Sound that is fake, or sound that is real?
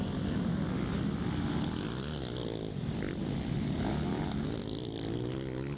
real